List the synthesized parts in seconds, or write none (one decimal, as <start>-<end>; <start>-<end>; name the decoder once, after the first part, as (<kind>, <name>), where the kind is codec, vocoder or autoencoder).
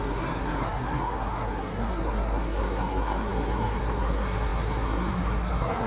0.0-5.9 (codec, SNAC)